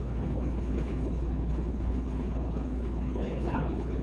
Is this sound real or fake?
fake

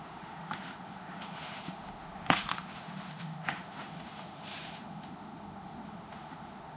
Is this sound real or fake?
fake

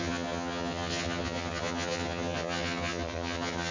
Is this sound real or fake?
fake